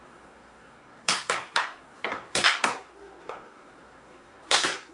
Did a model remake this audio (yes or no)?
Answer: yes